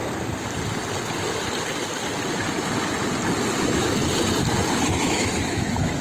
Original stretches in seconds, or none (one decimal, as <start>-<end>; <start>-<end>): 0.0-3.6; 4.0-4.9